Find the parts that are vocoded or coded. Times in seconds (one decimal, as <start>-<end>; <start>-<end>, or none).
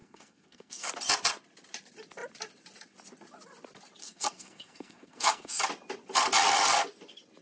0.0-0.9; 4.0-5.6